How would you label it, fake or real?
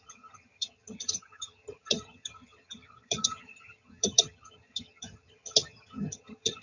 fake